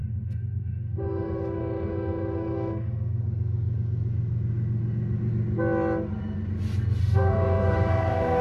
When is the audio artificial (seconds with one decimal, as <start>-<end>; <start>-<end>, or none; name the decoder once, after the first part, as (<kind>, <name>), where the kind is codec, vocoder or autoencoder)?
0.0-3.2 (autoencoder, DAC-VAE); 7.0-8.4